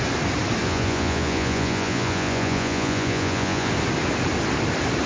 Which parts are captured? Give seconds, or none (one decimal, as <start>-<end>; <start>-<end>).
0.0-0.6; 3.7-5.1

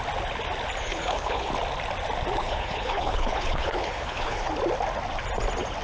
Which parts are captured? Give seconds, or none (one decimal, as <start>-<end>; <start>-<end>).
0.0-0.8; 1.5-2.4; 4.5-5.8

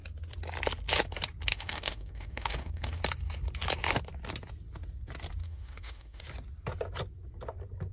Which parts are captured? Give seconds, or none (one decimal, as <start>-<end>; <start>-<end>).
0.0-1.5; 3.0-5.4; 6.2-7.9

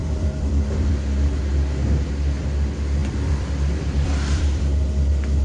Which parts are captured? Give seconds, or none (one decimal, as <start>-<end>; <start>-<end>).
0.9-3.0; 4.6-5.4

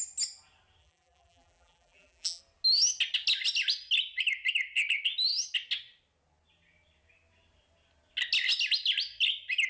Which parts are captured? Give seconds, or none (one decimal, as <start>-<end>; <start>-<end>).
0.0-0.8; 2.4-9.7